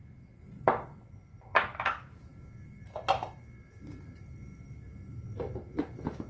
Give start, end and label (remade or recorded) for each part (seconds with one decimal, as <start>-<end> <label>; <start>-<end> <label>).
0.0-6.3 recorded